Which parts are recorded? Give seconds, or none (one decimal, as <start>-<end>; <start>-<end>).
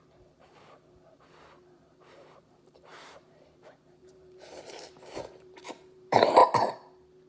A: 6.4-7.3